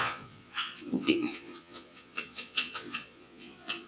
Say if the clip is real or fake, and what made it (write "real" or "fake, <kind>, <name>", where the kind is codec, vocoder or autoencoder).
fake, vocoder, Vocos